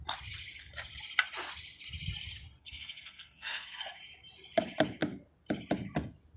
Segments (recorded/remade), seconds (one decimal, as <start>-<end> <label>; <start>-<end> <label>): 0.0-2.6 recorded; 2.6-4.0 remade; 4.0-6.4 recorded